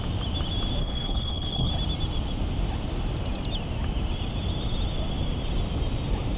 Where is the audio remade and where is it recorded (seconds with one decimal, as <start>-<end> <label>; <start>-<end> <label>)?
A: 0.0-0.8 recorded; 0.8-1.7 remade; 1.7-6.4 recorded